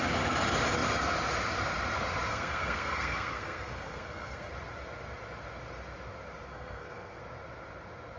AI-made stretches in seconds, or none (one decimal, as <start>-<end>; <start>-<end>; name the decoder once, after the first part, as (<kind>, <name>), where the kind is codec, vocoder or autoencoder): 2.3-4.5 (codec, SNAC); 6.5-7.2